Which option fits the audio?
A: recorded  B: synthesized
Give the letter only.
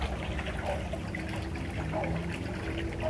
A